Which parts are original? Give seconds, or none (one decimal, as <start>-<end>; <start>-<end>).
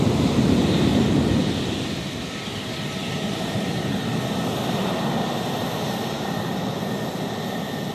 0.9-2.5; 4.1-7.9